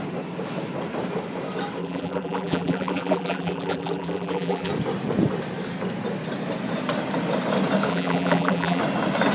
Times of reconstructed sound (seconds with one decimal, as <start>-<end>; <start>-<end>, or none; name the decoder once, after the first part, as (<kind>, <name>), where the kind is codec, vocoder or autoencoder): 1.8-4.7 (vocoder, BigVGAN v2); 7.9-8.8